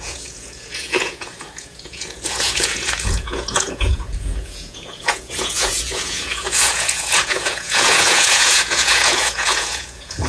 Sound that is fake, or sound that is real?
fake